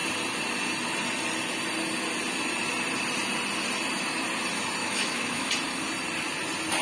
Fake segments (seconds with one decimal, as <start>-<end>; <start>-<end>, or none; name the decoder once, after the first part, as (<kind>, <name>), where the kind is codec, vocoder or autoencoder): 4.8-5.5 (autoencoder, DAC-VAE)